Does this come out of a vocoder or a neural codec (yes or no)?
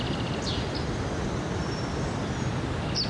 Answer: no